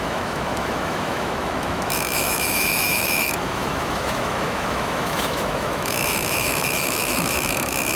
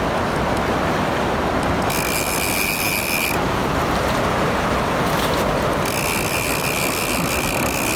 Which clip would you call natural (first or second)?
second